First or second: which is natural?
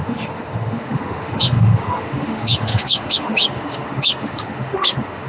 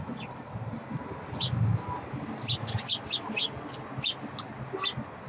second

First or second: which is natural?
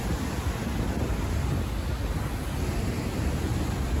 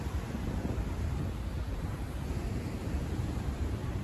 first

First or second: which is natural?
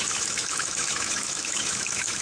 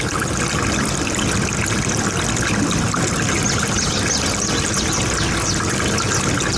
second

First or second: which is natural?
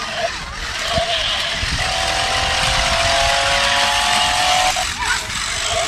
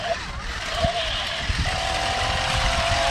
first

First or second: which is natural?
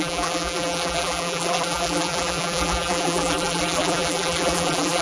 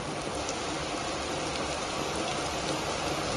second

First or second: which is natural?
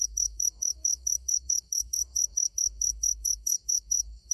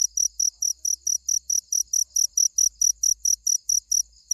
second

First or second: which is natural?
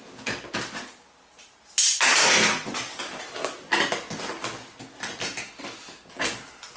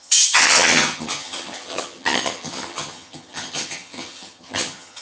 first